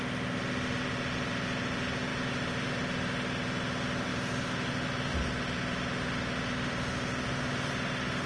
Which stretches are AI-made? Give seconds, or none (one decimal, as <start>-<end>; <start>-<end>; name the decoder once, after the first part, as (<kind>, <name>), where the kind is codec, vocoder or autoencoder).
none